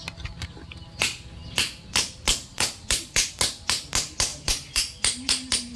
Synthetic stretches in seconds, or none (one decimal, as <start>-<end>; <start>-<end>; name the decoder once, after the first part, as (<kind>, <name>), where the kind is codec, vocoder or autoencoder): 2.5-3.3 (vocoder, BigVGAN v2); 4.3-5.8